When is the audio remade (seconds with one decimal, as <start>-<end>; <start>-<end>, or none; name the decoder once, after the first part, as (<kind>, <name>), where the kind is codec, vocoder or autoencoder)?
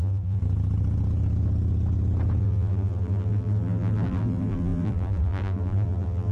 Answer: 0.0-0.4 (vocoder, BigVGAN v2); 2.4-6.3